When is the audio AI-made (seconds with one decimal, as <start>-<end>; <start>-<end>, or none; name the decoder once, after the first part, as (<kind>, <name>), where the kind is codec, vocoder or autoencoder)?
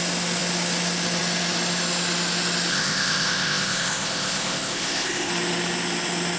2.7-5.3 (codec, ZipCodec)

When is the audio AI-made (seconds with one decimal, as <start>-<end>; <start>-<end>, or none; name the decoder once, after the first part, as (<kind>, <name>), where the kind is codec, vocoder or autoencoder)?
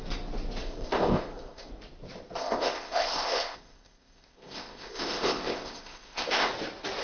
0.6-1.7 (codec, ZipCodec); 2.4-6.5